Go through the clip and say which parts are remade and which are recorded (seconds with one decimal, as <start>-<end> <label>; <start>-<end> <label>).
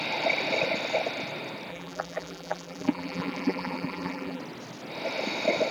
0.0-1.7 recorded; 1.7-4.4 remade; 4.4-5.7 recorded